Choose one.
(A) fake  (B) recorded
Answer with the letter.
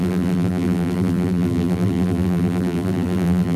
A